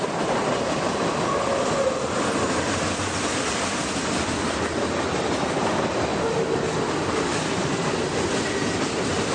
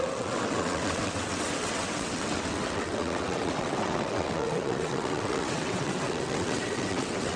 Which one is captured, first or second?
first